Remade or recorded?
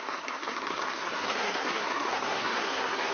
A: remade